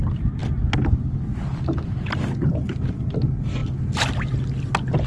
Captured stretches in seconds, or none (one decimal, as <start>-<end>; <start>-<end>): 0.0-5.1